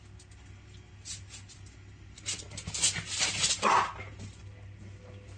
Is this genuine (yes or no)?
yes